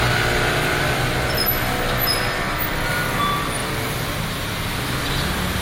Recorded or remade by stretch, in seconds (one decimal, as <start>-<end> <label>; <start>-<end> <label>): 0.0-5.6 recorded